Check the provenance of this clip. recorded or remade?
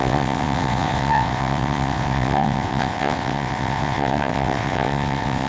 remade